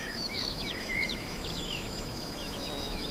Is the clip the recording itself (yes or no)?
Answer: no